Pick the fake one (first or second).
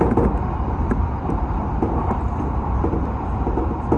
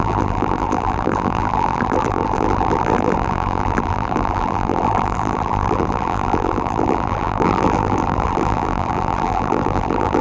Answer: second